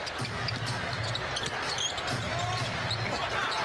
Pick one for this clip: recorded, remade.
recorded